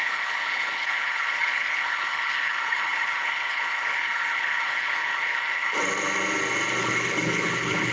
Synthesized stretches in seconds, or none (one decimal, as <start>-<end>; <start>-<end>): 0.0-5.8; 6.8-7.9